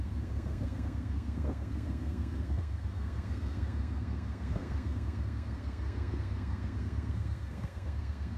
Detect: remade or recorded remade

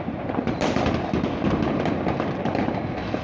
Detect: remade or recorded recorded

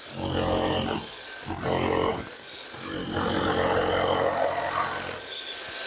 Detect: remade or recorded recorded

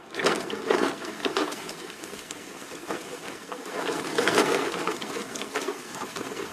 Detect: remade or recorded remade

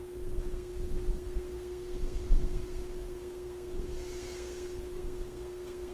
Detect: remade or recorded remade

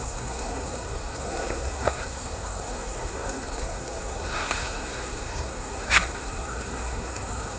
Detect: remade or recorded remade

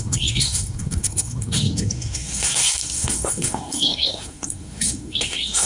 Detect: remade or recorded remade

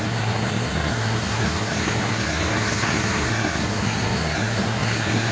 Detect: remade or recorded remade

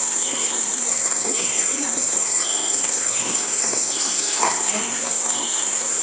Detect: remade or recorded remade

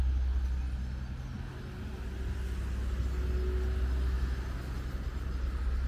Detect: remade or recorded recorded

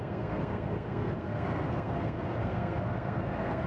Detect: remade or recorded remade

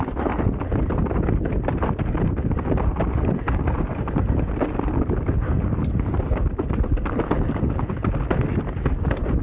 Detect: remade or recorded recorded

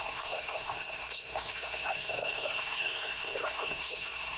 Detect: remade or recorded remade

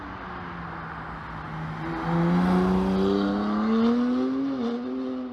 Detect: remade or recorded recorded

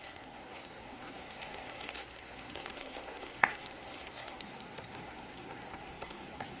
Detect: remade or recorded remade